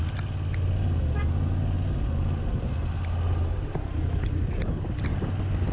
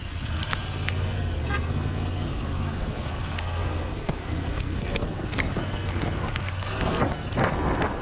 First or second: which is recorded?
first